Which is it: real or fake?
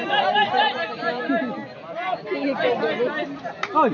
real